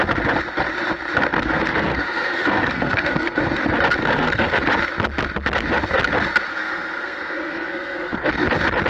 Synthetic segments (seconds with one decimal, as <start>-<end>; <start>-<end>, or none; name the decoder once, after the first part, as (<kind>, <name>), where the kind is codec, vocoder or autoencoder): 1.3-3.4 (codec, SNAC); 4.0-4.6; 6.5-8.3